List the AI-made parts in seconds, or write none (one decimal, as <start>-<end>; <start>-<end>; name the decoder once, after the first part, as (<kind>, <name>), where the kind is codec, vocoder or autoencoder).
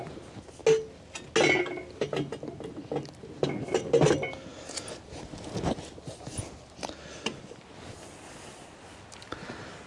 none